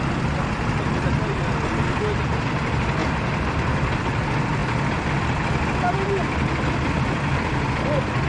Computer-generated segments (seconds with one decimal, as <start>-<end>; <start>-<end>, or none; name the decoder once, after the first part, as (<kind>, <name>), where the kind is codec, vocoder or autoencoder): none